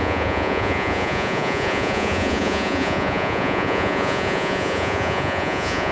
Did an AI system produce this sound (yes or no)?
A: yes